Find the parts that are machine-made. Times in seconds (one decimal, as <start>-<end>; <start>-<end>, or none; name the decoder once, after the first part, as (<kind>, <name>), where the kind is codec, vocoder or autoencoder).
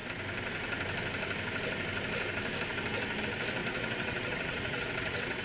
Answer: 3.6-5.4 (vocoder, WaveNeXt)